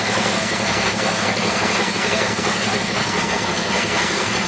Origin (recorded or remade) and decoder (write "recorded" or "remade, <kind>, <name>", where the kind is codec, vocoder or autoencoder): remade, codec, SNAC